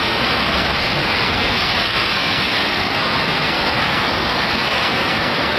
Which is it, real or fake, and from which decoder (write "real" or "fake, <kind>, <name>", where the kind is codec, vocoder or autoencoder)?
fake, codec, SNAC